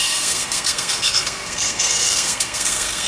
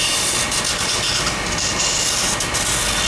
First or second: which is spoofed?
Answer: first